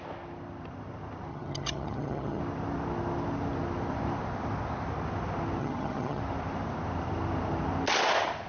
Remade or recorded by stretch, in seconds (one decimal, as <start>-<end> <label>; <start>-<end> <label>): 0.0-1.3 recorded; 1.3-2.4 remade; 2.4-5.6 recorded; 5.6-6.2 remade; 6.2-8.5 recorded